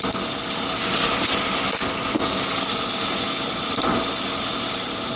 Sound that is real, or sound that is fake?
real